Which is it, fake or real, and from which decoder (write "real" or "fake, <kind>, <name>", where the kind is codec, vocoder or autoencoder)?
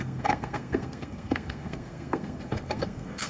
fake, codec, SNAC